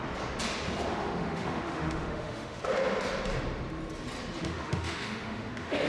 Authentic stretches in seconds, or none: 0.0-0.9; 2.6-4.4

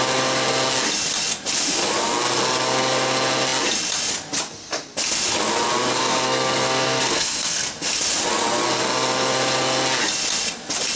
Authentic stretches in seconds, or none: 0.0-6.0; 7.9-11.0

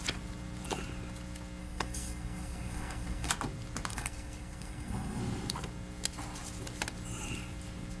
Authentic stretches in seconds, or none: 0.0-1.6; 3.3-3.9; 5.2-8.0

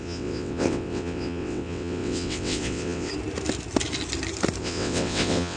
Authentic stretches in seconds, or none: 3.1-4.6

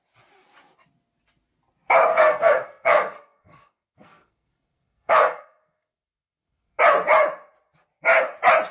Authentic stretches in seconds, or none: 0.0-2.1; 6.8-8.7

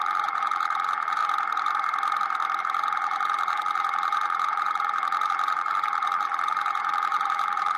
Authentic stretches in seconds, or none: 1.2-2.6